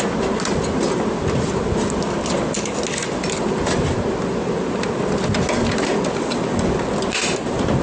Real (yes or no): yes